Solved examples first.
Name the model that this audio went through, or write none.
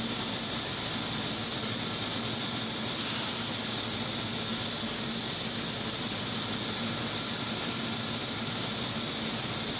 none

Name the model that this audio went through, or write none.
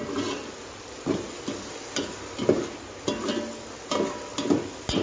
none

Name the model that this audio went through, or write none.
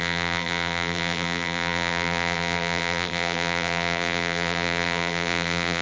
vocoder, BigVGAN v2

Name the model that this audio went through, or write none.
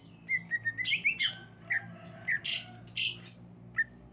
none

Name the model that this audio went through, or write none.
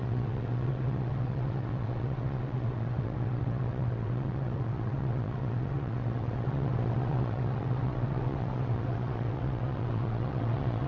vocoder, WaveNeXt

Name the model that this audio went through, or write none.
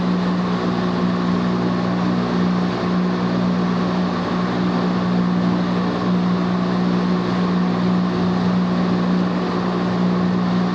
none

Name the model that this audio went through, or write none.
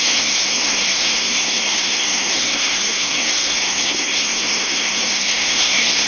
codec, SNAC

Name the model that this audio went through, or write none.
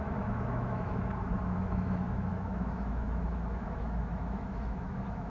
autoencoder, DAC-VAE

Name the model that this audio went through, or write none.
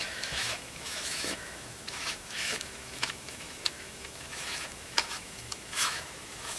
autoencoder, DAC-VAE